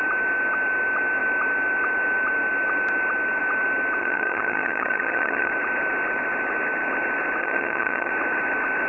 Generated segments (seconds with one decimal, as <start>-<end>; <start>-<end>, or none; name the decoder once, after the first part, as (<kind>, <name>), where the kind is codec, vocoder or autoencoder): 4.0-5.5 (vocoder, HiFi-GAN); 7.4-8.1

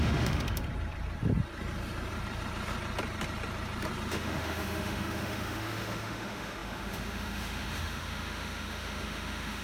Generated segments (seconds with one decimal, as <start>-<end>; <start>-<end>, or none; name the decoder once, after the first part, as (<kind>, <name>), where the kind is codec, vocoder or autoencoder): 0.0-0.6 (autoencoder, DAC-VAE); 4.1-9.6